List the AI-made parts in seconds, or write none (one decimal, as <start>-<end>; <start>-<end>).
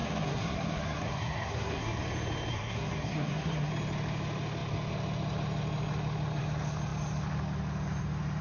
0.0-2.0; 2.5-3.7